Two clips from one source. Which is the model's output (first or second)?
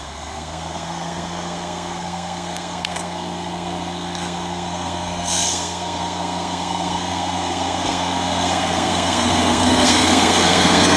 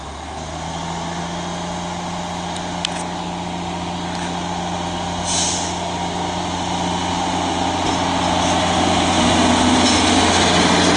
first